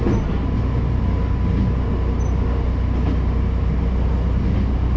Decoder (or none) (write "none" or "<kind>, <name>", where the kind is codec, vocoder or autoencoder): none